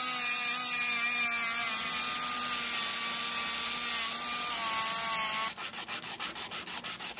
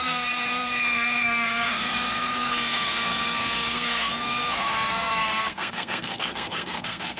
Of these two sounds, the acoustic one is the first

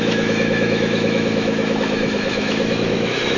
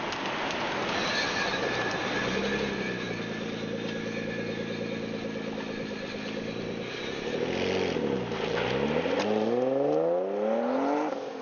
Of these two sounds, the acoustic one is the second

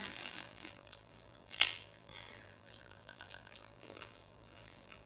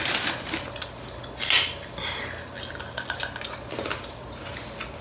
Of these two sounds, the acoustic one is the second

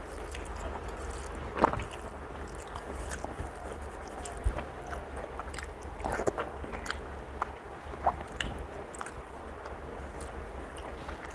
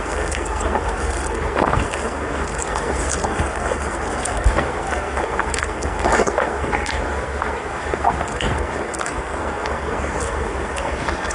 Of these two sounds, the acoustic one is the first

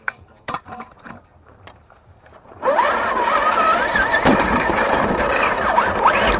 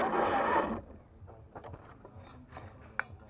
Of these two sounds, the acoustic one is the second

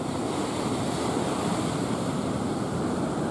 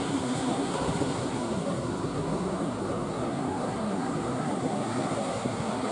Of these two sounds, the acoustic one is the first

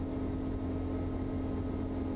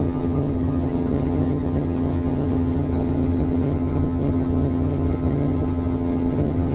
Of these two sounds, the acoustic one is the first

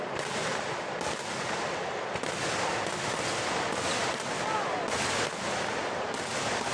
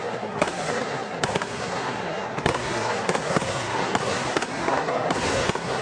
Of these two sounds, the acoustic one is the first